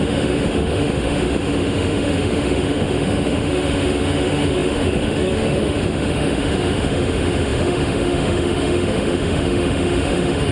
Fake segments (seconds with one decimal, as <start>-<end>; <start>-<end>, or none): 0.0-10.5